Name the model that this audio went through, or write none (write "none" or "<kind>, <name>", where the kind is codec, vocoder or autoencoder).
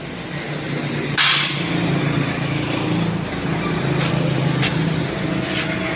none